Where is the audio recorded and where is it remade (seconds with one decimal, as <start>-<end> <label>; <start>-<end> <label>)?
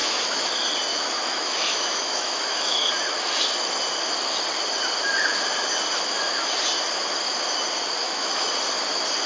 0.0-0.5 remade; 0.5-0.9 recorded; 0.9-2.9 remade; 2.9-8.0 recorded; 8.0-8.5 remade; 8.5-9.3 recorded